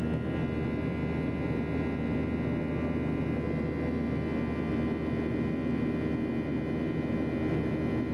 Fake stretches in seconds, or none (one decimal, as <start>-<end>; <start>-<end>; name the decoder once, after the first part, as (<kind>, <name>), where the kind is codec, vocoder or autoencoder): none